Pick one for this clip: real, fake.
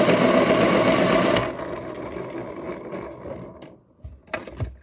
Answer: real